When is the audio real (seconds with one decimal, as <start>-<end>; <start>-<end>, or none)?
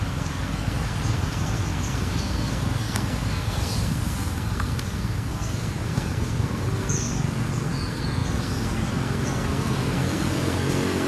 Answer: none